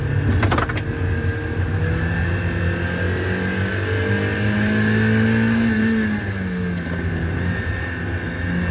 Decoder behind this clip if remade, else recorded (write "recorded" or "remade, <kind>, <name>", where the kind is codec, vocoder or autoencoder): recorded